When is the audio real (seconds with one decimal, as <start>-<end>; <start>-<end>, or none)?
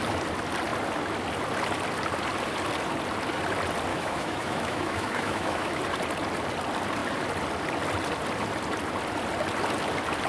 0.0-3.9; 5.8-10.3